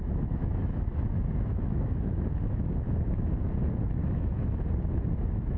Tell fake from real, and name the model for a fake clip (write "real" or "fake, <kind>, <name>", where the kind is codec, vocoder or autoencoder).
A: fake, autoencoder, DAC-VAE